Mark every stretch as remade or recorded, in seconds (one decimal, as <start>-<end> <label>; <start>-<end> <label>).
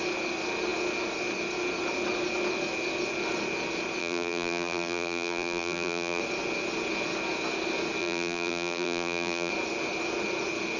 0.0-4.0 recorded; 4.0-6.2 remade; 6.2-8.0 recorded; 8.0-9.5 remade; 9.5-10.8 recorded